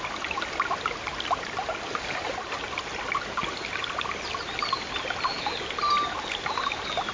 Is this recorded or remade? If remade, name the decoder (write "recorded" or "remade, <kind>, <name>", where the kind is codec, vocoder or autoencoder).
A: recorded